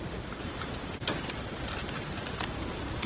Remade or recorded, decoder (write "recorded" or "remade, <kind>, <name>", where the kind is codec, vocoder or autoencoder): recorded